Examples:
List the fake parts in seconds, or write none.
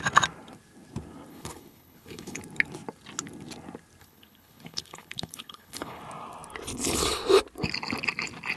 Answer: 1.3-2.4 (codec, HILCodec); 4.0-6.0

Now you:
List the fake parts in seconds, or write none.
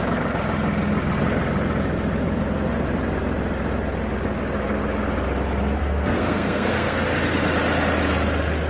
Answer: 5.8-7.0 (codec, SNAC)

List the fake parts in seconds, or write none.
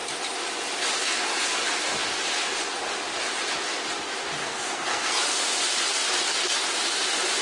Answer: 4.4-5.2 (codec, SNAC)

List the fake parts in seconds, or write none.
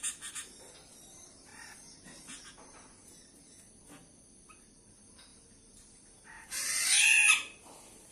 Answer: none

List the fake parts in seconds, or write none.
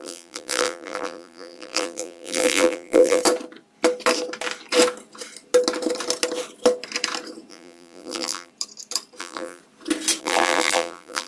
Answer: 0.0-3.2 (vocoder, BigVGAN v2); 7.5-8.5; 9.2-9.6; 10.2-11.3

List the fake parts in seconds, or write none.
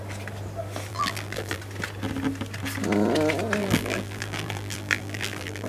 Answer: 0.9-1.6 (vocoder, BigVGAN v2); 3.6-5.7